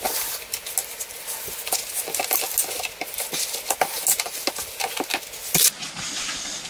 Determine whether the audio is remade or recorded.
recorded